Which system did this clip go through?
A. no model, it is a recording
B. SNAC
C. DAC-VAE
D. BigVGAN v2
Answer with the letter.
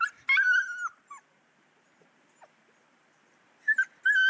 A